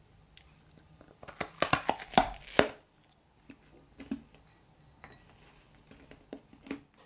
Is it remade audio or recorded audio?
recorded